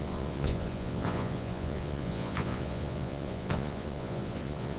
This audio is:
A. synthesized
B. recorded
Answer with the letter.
A